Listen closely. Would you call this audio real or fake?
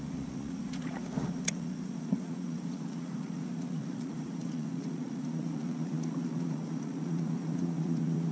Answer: fake